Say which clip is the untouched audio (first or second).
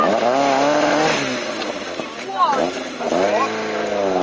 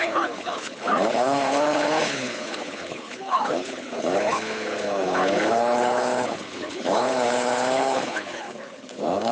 first